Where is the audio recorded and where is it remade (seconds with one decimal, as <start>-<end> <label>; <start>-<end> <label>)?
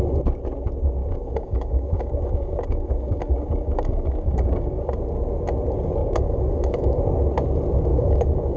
0.0-1.0 recorded; 1.0-4.8 remade; 4.8-6.0 recorded; 6.0-7.0 remade; 7.0-7.9 recorded; 7.9-8.6 remade